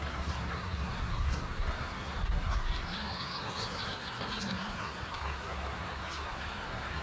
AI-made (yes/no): yes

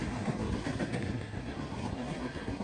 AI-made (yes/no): yes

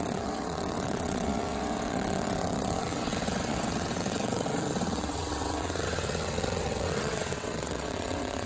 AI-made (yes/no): yes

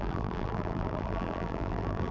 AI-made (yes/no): yes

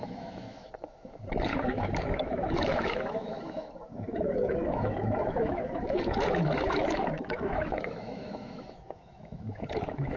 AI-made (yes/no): yes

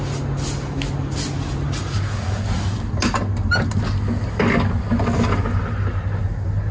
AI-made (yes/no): no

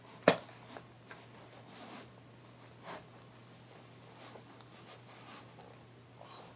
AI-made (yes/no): no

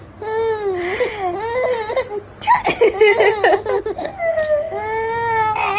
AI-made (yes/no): no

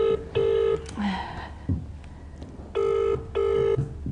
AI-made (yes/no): no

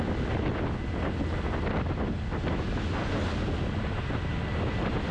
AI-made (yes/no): no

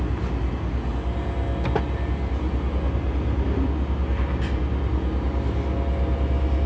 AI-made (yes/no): no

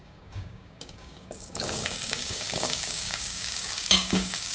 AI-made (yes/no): yes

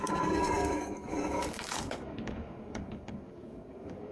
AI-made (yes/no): yes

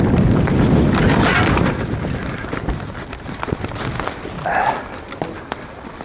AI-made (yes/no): no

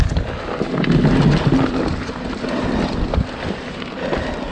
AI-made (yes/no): no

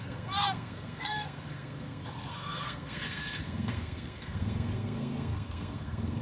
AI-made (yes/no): yes